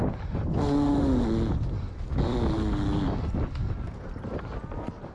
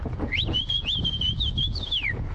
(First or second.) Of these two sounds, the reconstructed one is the second